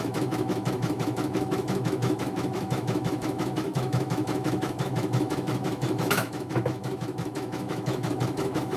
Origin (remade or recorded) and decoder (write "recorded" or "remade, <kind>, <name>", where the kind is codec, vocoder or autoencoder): remade, autoencoder, DAC-VAE